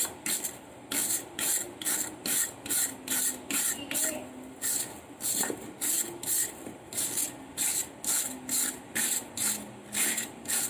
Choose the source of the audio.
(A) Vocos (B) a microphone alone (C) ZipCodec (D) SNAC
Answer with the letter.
B